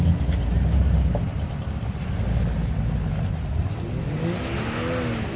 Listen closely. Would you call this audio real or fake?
real